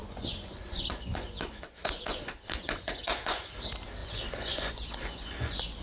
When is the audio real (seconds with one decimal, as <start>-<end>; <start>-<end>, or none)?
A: 3.5-4.0